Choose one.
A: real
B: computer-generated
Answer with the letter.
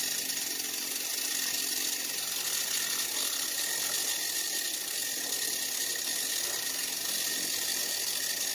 A